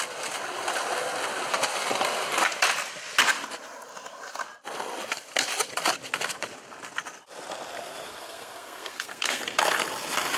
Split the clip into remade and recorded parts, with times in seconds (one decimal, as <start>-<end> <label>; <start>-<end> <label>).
0.0-8.1 recorded; 8.1-9.4 remade; 9.4-10.4 recorded